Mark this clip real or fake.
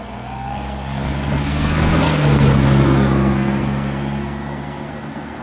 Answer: fake